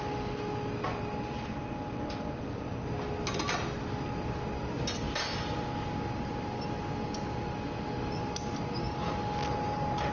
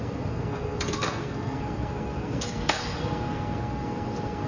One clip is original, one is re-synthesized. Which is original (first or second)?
first